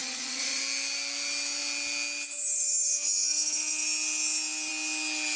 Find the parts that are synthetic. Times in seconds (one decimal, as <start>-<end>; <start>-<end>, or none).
0.0-0.6